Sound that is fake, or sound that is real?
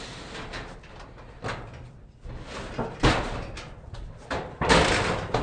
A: real